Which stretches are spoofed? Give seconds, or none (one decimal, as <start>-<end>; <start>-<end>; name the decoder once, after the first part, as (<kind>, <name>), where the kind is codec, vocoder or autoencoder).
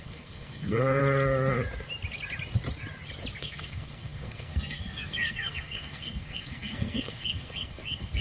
0.0-1.0 (codec, SNAC); 3.4-8.2